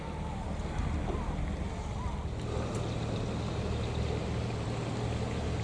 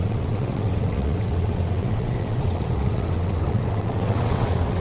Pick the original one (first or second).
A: first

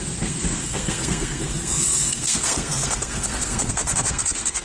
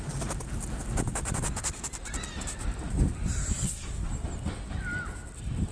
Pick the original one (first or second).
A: second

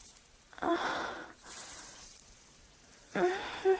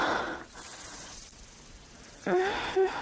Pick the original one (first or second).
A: second